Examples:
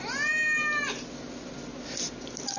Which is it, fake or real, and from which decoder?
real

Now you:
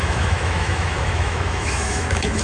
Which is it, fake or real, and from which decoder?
fake, autoencoder, DAC-VAE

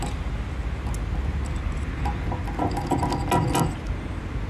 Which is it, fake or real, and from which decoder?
real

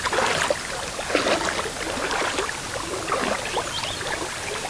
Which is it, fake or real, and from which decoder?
real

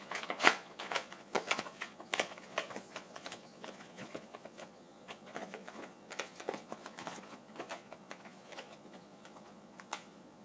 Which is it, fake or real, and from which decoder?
fake, vocoder, Vocos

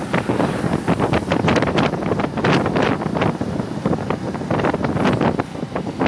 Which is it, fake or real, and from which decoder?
real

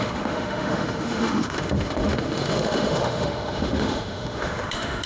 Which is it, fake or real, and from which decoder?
fake, autoencoder, DAC-VAE